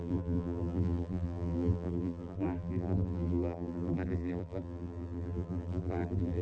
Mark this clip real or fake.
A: fake